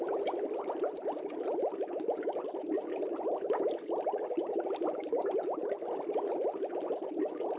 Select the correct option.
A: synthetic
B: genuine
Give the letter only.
B